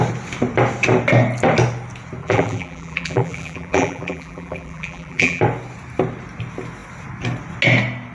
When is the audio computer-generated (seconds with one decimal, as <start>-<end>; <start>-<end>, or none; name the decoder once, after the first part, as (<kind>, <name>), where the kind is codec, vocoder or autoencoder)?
2.2-5.4 (vocoder, BigVGAN v2)